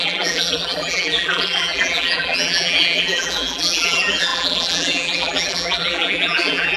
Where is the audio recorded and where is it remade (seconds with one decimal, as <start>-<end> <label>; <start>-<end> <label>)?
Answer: 0.0-6.8 remade